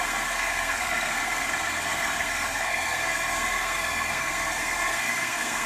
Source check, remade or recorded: remade